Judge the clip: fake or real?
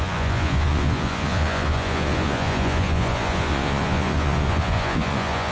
fake